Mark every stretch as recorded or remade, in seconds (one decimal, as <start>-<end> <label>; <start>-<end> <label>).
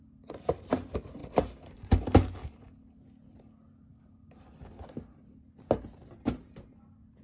0.0-1.2 recorded; 1.2-2.6 remade; 2.6-7.2 recorded